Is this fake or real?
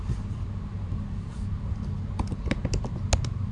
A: real